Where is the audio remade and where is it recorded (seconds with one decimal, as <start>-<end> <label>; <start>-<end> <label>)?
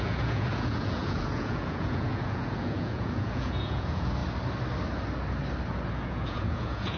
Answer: 0.0-4.2 remade; 4.2-5.9 recorded; 5.9-7.0 remade